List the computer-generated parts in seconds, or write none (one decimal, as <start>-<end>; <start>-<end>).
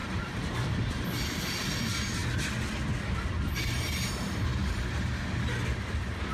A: 0.0-1.2